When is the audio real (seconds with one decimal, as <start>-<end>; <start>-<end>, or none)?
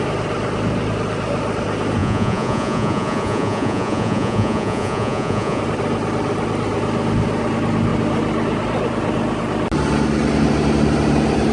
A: 0.0-2.0; 5.6-11.5